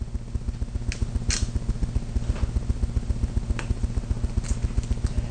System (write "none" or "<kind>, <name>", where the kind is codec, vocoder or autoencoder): none